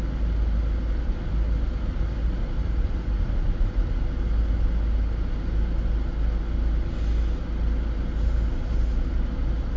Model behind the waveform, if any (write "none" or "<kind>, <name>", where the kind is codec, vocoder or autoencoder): none